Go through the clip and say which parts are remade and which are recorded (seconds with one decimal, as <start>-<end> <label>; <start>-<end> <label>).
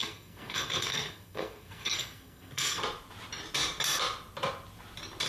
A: 0.0-2.8 remade; 2.8-5.3 recorded